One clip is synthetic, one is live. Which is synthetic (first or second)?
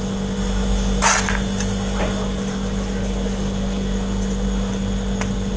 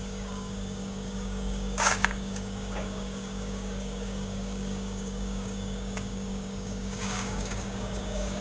second